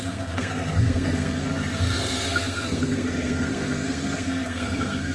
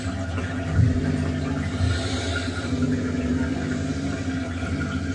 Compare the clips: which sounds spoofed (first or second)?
first